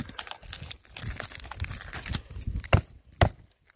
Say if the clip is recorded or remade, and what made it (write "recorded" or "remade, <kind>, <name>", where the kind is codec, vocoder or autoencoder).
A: recorded